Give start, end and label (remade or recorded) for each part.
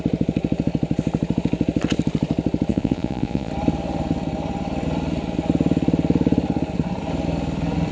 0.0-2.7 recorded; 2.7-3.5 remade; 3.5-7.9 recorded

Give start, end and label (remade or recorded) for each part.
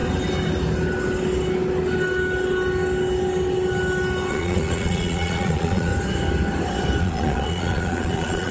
0.0-4.3 recorded; 4.3-5.9 remade; 5.9-7.0 recorded; 7.0-8.5 remade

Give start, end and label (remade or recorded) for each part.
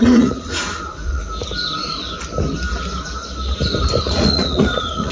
0.0-1.2 remade; 1.2-4.0 recorded; 4.0-5.1 remade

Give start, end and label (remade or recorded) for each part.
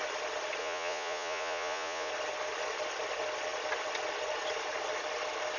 0.0-0.6 recorded; 0.6-2.1 remade; 2.1-5.6 recorded